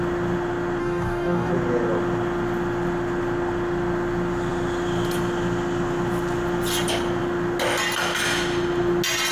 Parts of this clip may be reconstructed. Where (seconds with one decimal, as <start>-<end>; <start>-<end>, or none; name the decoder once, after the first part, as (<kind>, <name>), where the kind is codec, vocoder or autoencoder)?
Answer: 0.8-1.5 (codec, DAC)